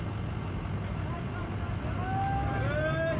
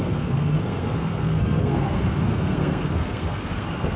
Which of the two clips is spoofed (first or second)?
second